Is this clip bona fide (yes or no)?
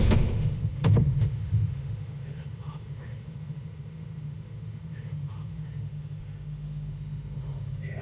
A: no